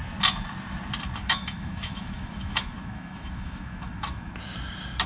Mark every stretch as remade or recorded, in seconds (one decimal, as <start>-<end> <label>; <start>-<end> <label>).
0.0-1.2 recorded; 1.2-4.3 remade; 4.3-5.1 recorded